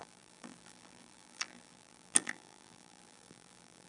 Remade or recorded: remade